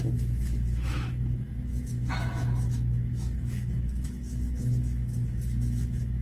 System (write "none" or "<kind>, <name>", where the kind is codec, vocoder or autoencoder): autoencoder, DAC-VAE